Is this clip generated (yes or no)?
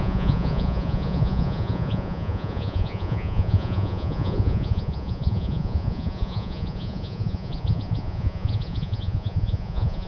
yes